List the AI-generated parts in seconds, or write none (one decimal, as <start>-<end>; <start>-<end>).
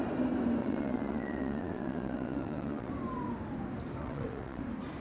0.6-2.9; 4.0-4.6